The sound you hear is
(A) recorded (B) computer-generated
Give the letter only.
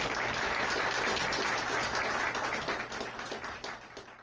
A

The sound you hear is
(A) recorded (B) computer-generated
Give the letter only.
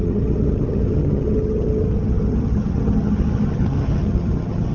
B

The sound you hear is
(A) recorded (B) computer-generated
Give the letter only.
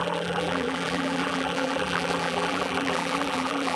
B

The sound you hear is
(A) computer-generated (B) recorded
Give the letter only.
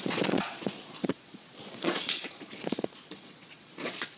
A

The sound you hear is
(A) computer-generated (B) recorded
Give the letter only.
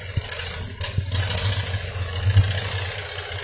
B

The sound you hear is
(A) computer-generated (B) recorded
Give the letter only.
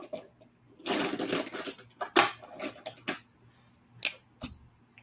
B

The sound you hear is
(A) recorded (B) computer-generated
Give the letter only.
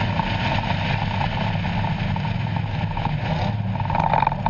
A